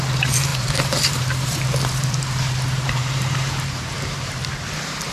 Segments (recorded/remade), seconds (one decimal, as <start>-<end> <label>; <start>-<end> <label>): 0.0-4.4 remade; 4.4-5.1 recorded